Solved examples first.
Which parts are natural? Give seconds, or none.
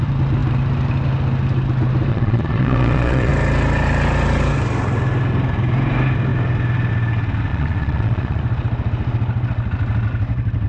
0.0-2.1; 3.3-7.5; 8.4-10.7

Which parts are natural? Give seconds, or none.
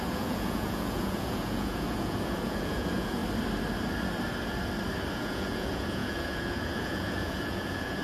3.2-5.1